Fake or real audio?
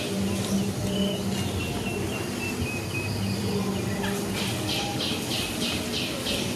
real